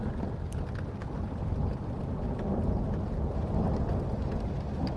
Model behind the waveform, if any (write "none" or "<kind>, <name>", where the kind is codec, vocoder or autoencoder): none